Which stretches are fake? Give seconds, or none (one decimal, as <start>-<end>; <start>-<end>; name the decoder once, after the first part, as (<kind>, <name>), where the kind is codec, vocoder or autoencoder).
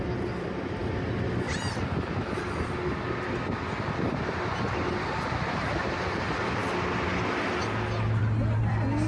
none